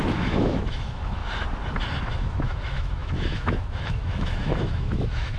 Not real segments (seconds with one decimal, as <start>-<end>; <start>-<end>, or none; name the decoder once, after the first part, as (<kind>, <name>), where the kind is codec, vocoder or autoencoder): 0.0-1.2 (autoencoder, DAC-VAE); 2.0-5.4